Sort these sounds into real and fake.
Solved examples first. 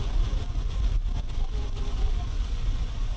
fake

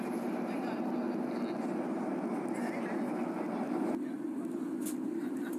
real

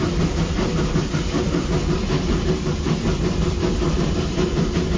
real